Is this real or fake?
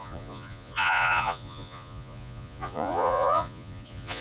fake